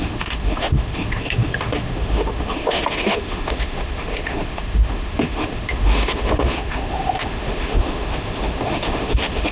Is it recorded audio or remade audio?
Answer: remade